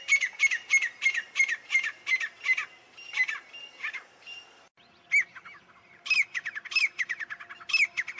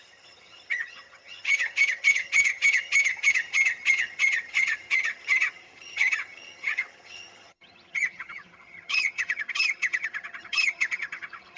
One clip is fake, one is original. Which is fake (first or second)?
second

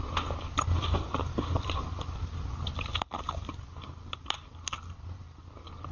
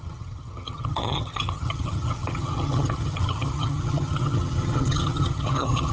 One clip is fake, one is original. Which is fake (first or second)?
second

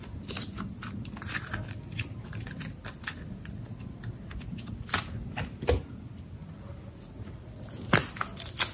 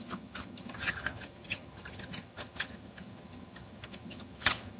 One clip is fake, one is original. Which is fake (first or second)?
second